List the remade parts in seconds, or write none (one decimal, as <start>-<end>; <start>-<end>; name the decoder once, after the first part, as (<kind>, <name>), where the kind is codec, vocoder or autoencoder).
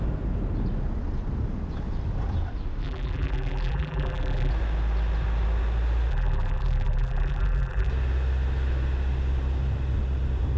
2.8-4.5 (vocoder, BigVGAN v2); 6.1-7.9